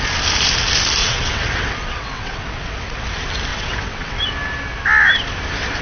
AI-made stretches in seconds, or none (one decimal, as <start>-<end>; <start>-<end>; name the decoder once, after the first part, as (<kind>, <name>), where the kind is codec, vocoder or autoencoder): 1.0-3.1 (vocoder, WaveNeXt); 3.5-4.2